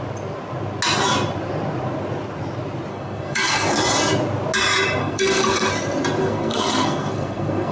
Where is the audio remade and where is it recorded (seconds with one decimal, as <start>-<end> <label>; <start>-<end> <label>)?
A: 0.0-2.9 recorded; 2.9-3.6 remade; 3.6-5.0 recorded; 5.0-5.7 remade; 5.7-6.2 recorded; 6.2-7.7 remade